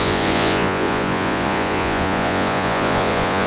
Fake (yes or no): yes